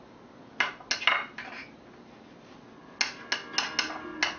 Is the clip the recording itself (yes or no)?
yes